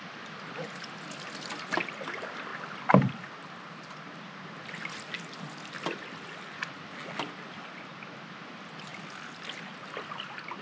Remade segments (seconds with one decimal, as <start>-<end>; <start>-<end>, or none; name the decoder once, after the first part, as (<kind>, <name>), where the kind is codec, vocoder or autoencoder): none